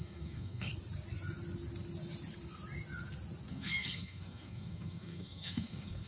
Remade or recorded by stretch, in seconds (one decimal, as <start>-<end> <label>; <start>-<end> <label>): 0.0-0.7 remade; 0.7-3.5 recorded; 3.5-6.1 remade